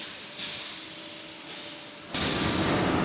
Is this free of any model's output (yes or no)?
yes